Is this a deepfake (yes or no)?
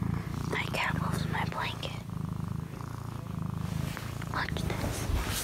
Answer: no